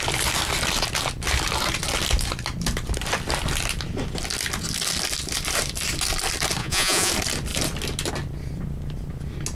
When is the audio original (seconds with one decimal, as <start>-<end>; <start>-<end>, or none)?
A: 0.0-6.6; 7.1-9.5